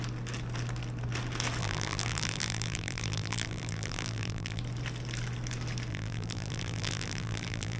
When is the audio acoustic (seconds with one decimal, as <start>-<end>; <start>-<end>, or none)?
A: 0.0-1.6; 4.6-5.9